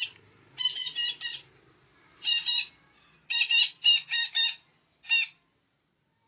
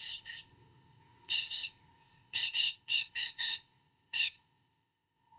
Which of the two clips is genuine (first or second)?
first